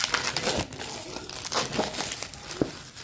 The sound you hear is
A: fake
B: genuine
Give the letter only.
B